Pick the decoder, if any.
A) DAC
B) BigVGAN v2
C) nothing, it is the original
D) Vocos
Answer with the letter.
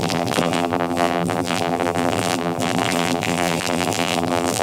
B